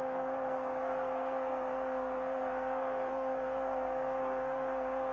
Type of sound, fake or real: fake